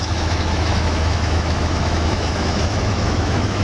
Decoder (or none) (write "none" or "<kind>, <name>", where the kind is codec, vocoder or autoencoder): autoencoder, DAC-VAE